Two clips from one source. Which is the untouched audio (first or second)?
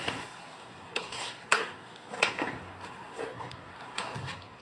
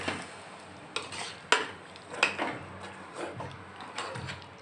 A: second